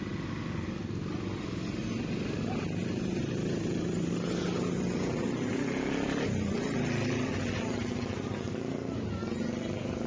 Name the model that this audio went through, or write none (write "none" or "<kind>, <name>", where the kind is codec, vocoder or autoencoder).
none